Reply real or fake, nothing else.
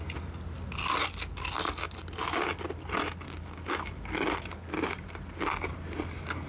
real